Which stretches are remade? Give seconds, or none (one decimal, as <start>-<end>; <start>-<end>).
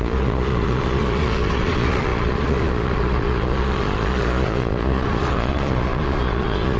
0.0-6.8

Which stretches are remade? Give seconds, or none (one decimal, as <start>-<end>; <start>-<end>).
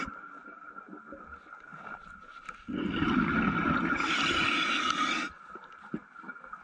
1.7-3.9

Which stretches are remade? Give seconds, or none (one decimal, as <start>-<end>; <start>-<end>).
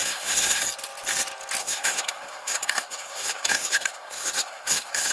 0.0-0.6; 1.6-5.1